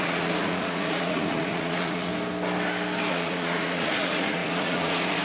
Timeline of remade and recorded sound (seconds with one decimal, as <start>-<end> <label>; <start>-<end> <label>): 0.0-2.1 remade; 2.1-3.1 recorded; 3.1-5.2 remade